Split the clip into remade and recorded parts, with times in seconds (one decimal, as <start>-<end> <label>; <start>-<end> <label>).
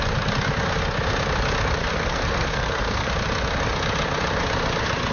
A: 0.0-1.8 recorded; 1.8-3.1 remade; 3.1-5.1 recorded